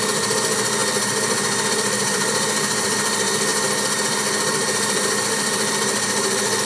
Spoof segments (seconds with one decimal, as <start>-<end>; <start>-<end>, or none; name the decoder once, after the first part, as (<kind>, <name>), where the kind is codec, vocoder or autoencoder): 0.0-0.8 (vocoder, BigVGAN v2); 1.7-3.5; 4.0-6.6